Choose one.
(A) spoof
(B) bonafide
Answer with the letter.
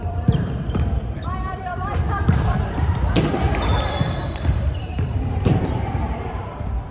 A